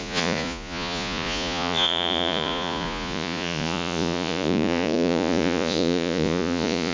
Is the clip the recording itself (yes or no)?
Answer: no